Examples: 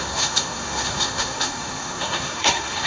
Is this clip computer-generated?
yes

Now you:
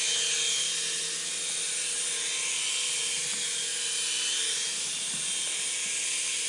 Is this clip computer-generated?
no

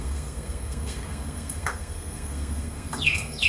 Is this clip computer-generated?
yes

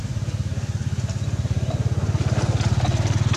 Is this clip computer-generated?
no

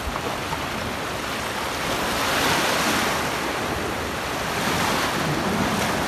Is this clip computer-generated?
no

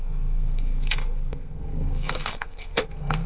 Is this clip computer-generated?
yes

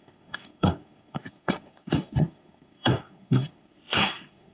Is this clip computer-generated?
yes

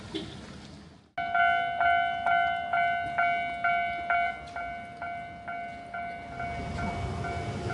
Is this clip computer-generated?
no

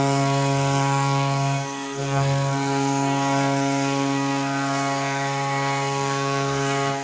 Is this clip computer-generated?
yes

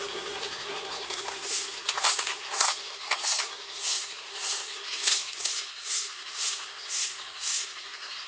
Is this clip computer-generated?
yes